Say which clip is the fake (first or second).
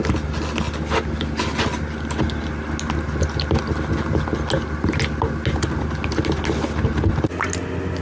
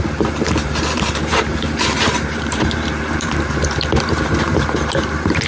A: second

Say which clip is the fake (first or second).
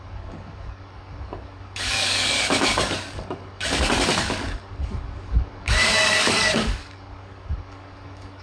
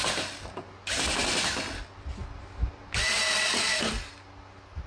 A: first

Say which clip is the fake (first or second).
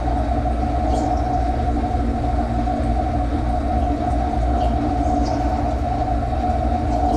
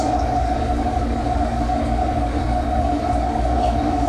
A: second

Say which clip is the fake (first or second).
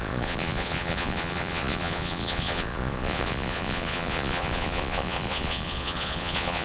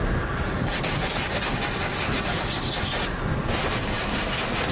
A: first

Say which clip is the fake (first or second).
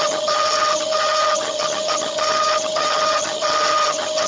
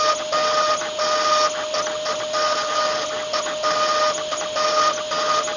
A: first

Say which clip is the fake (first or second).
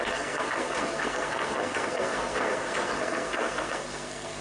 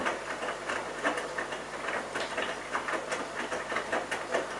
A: first